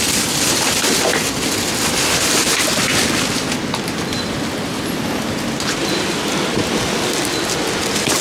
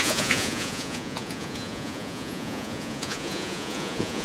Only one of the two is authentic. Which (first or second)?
first